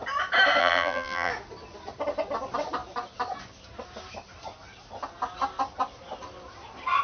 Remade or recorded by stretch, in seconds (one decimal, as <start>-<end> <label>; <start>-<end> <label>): 0.0-0.6 recorded; 0.6-1.3 remade; 1.3-7.0 recorded